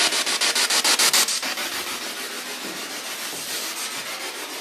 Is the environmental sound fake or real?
real